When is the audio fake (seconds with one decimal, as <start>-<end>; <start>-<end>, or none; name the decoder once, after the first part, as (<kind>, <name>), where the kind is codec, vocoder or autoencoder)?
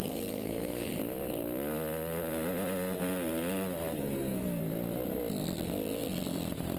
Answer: 0.0-0.9 (codec, SNAC); 4.0-4.6